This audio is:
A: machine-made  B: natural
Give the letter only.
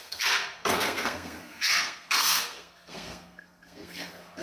A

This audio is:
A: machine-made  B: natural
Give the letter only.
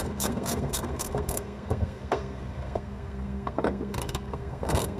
A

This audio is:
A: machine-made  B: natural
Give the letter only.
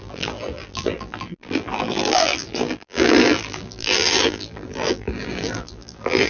A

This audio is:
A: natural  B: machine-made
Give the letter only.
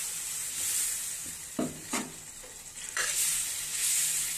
A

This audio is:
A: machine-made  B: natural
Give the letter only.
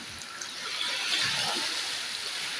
B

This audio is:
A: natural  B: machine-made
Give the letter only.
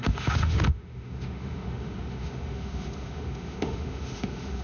B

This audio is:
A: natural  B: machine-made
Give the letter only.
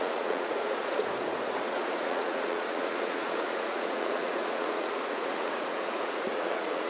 B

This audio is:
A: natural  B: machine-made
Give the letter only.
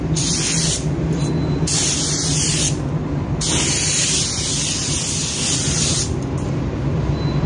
A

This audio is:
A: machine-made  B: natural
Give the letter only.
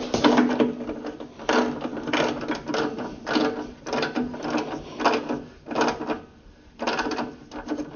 B